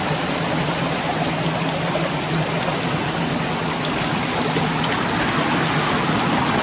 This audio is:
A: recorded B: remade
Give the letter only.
A